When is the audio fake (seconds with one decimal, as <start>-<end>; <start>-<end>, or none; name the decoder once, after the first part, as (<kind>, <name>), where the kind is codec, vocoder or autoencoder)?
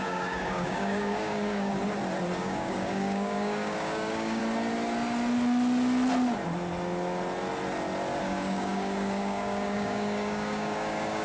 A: 0.0-1.7 (codec, DAC); 2.4-4.4; 8.2-11.2